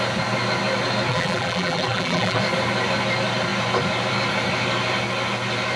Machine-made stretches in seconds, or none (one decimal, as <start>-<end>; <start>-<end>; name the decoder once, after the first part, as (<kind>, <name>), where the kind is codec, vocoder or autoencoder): 1.1-2.4 (vocoder, BigVGAN v2)